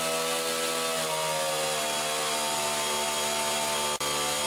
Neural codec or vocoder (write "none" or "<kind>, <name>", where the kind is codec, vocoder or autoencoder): none